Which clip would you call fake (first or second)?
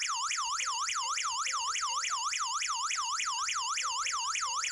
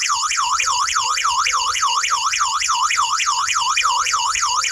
second